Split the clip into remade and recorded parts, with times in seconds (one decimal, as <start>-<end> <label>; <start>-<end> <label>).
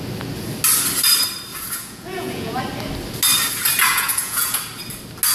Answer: 0.0-1.5 recorded; 1.5-2.6 remade; 2.6-3.9 recorded; 3.9-4.6 remade; 4.6-5.3 recorded